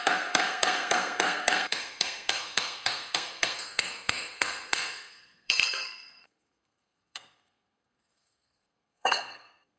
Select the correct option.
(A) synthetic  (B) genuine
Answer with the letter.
A